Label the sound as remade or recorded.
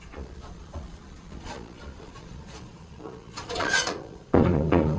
remade